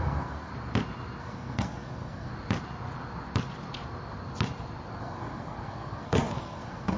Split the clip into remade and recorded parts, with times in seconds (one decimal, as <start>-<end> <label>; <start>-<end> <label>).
0.0-0.5 remade; 0.5-1.2 recorded; 1.2-2.3 remade; 2.3-5.0 recorded; 5.0-7.0 remade